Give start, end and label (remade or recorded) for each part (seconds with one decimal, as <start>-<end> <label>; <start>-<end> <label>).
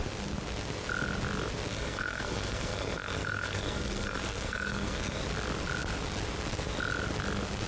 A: 0.0-1.7 recorded; 1.7-5.2 remade; 5.2-7.7 recorded